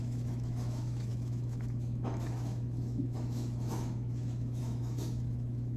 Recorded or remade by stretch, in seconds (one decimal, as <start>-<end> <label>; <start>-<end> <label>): 0.0-5.8 remade